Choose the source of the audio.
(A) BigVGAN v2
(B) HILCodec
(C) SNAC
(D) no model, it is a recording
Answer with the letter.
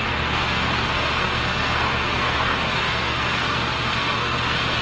C